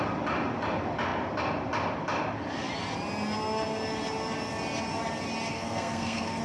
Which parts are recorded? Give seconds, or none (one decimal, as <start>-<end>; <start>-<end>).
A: 0.0-5.5